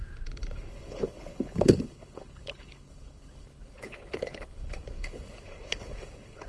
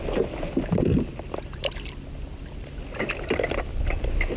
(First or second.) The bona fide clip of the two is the second